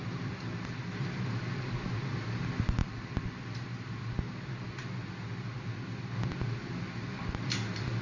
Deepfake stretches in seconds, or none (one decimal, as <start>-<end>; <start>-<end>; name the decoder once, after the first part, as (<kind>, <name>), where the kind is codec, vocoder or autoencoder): 0.0-1.4 (vocoder, BigVGAN v2); 2.8-3.6